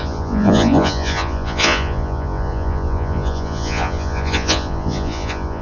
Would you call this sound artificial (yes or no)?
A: yes